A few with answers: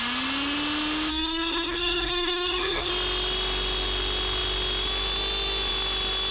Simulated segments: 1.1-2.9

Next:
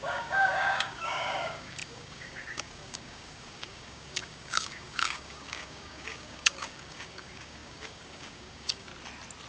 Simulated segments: 0.0-8.9

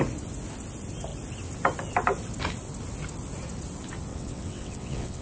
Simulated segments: 4.1-5.2

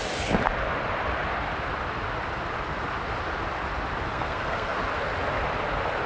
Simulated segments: 4.1-4.8

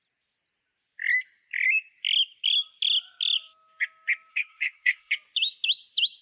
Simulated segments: 4.3-5.1

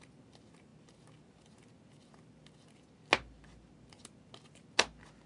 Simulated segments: none

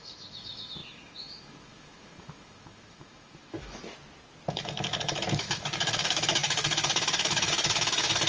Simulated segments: 0.0-3.8; 4.5-8.3